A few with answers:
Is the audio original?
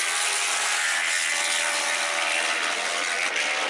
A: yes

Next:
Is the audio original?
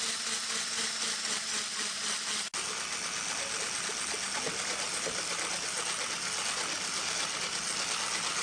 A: yes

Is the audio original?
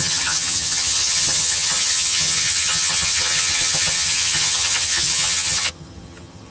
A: no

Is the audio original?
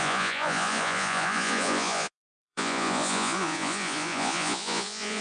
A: no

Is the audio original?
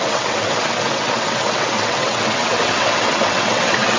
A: no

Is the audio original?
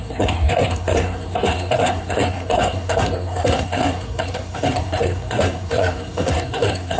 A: no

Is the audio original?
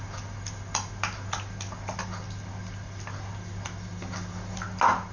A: yes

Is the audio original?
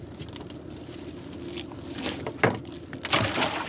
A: yes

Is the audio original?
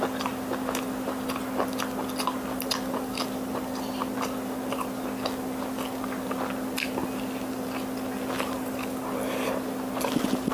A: yes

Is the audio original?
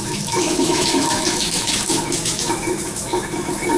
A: no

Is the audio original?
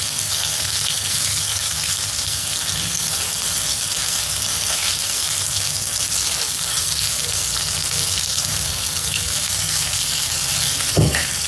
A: no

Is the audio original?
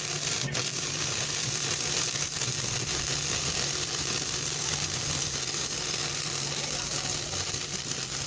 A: yes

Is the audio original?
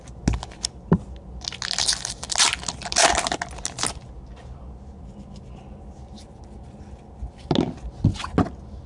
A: yes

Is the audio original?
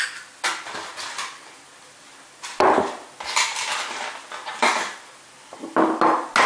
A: yes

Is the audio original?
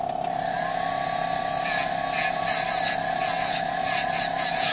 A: yes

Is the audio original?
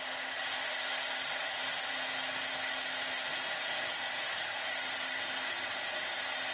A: yes